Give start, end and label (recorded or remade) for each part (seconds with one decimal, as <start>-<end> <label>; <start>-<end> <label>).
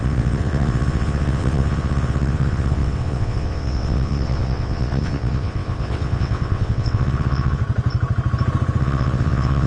0.0-7.6 remade; 7.6-8.8 recorded; 8.8-9.7 remade